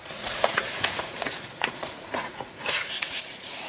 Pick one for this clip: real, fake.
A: fake